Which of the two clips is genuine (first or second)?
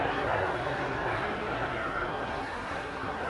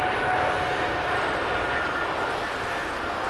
second